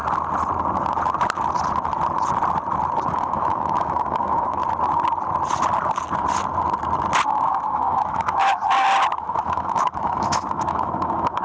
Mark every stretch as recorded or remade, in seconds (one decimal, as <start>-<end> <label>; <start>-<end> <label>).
0.0-3.1 recorded; 3.1-4.6 remade; 4.6-7.3 recorded; 7.3-8.6 remade; 8.6-9.2 recorded; 9.2-11.4 remade